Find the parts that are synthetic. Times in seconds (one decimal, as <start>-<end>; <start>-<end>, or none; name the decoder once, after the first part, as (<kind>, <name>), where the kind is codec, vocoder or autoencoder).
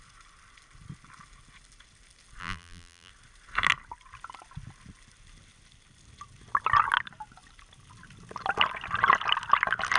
2.4-3.1 (vocoder, BigVGAN v2)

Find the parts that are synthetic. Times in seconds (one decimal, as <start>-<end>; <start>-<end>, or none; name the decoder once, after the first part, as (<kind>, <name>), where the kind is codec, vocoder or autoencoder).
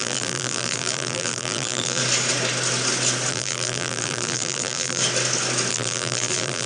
0.0-2.0 (vocoder, BigVGAN v2); 3.3-5.0; 5.7-6.7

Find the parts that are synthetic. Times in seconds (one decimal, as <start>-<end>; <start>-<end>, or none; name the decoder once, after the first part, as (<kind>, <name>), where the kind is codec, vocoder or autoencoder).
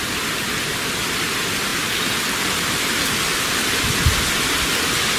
none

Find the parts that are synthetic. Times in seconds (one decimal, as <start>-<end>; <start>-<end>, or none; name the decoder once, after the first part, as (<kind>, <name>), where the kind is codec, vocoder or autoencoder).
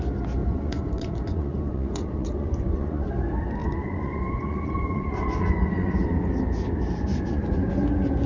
0.4-3.1 (vocoder, Vocos); 3.6-6.2; 7.1-7.7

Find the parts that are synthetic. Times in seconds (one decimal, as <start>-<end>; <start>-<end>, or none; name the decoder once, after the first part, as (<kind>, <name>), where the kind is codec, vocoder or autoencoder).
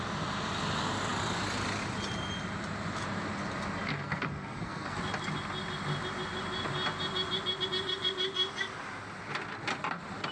3.9-5.0 (codec, SNAC)